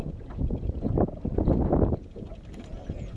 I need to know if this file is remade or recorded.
recorded